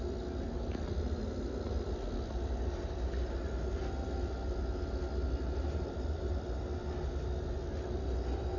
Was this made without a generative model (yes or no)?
yes